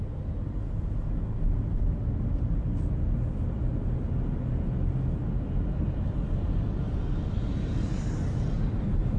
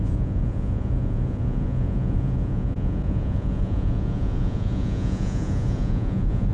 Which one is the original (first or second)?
first